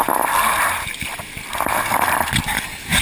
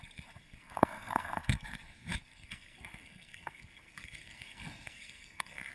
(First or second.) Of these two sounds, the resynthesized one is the second